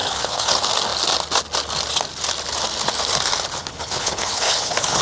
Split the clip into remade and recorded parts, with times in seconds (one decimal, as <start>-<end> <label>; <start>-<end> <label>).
0.0-0.5 remade; 0.5-3.6 recorded; 3.6-5.0 remade